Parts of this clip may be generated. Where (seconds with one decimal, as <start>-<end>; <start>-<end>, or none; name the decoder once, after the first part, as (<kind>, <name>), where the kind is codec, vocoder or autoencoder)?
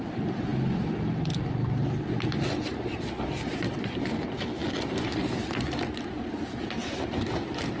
none